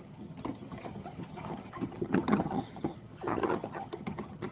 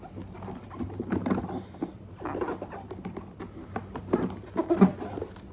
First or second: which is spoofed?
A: first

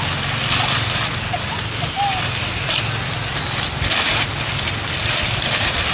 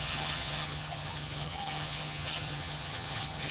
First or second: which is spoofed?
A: second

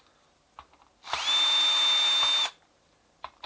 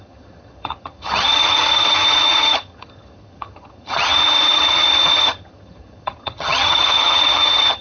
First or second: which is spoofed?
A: second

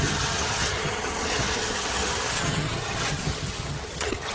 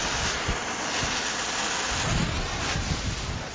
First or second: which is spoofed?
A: first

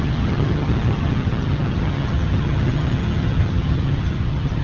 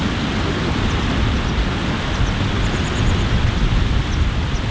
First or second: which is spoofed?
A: first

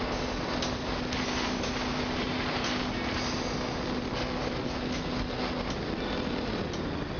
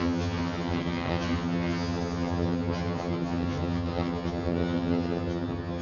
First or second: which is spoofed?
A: second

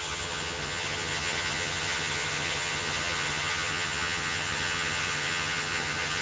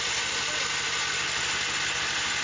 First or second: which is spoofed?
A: first